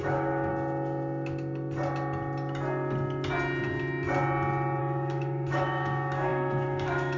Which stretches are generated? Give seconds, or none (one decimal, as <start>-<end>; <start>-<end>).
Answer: 0.0-0.5; 4.8-7.2